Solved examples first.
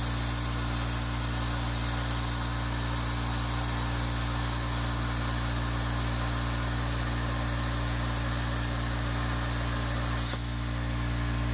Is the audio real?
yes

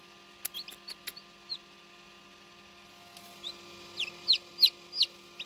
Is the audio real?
yes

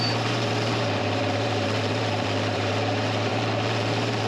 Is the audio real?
no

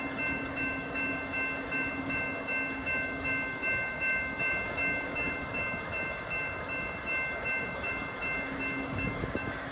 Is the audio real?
no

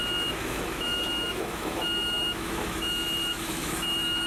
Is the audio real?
no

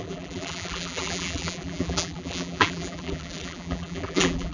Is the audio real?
no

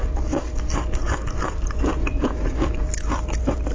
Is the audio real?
yes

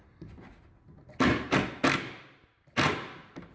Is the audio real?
yes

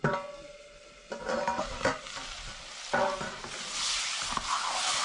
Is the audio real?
yes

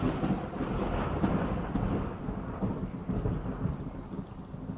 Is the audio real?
yes